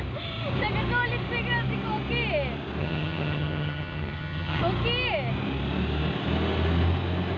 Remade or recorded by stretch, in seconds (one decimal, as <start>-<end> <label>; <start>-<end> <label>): 0.0-2.8 recorded; 2.8-4.6 remade; 4.6-7.4 recorded